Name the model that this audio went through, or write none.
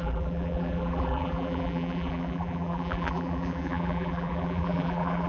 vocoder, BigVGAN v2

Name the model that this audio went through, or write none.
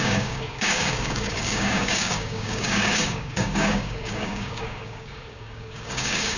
codec, DAC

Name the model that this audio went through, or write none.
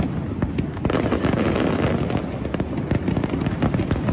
none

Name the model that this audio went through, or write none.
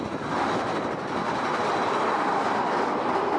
none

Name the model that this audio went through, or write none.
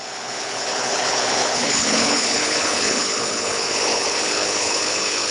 codec, HILCodec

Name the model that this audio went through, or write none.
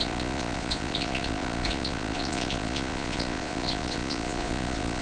vocoder, Vocos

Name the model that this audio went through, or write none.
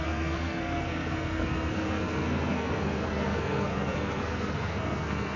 codec, SNAC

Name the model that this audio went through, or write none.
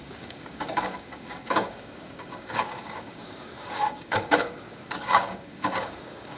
codec, DAC